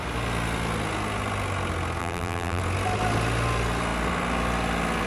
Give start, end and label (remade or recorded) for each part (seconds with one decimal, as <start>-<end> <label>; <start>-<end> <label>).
0.0-2.0 recorded; 2.0-2.6 remade; 2.6-5.1 recorded